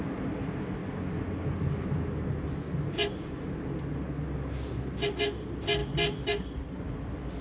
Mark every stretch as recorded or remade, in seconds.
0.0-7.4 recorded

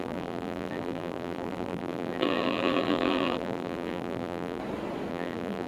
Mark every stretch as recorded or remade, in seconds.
0.0-4.6 remade; 4.6-5.1 recorded; 5.1-5.7 remade

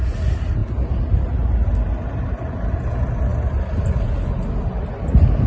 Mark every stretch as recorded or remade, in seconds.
0.0-5.5 recorded

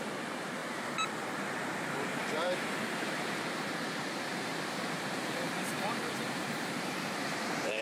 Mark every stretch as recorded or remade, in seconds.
0.0-0.6 remade; 0.6-1.2 recorded; 1.2-7.8 remade

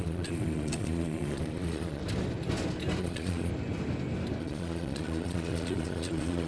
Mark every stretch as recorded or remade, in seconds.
0.0-2.0 remade; 2.0-3.0 recorded; 3.0-3.5 remade; 3.5-4.4 recorded; 4.4-6.5 remade